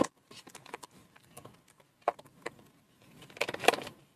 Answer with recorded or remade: recorded